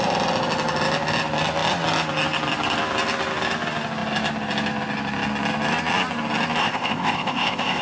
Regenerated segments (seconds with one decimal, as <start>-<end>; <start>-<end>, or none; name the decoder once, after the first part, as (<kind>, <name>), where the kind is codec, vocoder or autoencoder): 6.6-7.8 (codec, ZipCodec)